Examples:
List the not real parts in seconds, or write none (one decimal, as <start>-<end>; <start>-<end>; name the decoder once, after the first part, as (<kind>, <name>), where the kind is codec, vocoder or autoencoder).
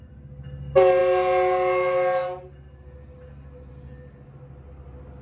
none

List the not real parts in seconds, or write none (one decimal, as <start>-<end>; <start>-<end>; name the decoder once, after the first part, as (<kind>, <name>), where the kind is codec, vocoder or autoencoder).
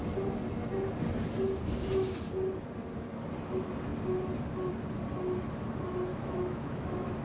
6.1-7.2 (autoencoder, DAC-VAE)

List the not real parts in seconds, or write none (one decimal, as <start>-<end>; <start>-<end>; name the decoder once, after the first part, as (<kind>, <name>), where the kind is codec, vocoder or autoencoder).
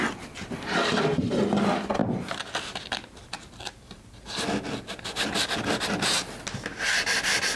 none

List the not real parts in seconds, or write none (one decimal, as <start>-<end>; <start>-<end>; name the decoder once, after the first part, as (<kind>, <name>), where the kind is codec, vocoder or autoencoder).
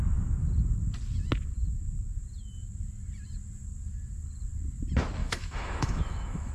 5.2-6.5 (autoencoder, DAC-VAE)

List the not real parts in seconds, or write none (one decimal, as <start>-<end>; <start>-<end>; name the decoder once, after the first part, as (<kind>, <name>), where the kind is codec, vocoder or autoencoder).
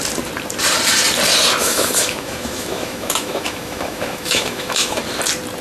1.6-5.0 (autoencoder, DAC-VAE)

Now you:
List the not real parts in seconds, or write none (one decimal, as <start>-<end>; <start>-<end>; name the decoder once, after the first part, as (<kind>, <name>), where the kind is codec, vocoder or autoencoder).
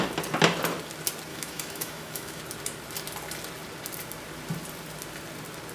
1.3-2.4 (autoencoder, DAC-VAE)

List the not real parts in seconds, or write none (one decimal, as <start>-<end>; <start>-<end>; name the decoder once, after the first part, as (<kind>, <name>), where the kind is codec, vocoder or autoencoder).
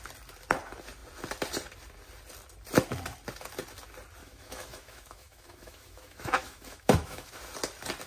4.2-7.4 (autoencoder, DAC-VAE)